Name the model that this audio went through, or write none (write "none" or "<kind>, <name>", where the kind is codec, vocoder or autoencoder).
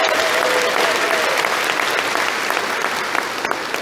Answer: none